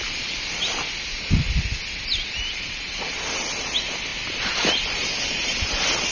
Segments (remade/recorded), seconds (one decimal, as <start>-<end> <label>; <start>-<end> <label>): 0.0-6.1 recorded